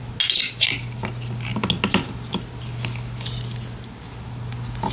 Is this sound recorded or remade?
recorded